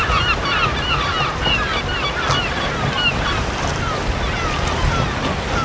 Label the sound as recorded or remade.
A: recorded